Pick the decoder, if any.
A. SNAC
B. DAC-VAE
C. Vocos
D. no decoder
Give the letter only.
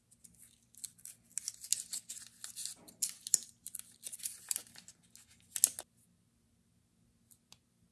D